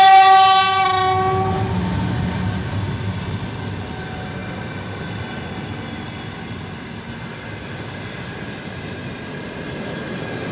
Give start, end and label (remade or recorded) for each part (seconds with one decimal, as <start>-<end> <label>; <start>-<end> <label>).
0.0-10.5 recorded